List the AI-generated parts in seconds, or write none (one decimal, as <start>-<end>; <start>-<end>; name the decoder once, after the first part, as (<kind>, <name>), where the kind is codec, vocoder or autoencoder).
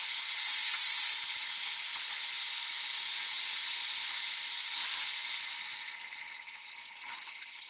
2.9-3.6 (vocoder, Vocos)